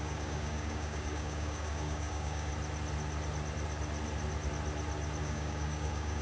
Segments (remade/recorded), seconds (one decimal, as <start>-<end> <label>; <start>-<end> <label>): 0.0-2.5 remade; 2.5-5.2 recorded; 5.2-6.2 remade